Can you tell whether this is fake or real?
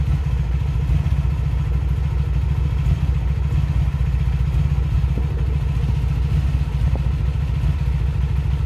real